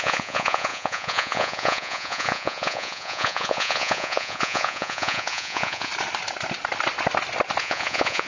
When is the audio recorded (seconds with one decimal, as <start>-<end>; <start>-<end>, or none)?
5.9-7.6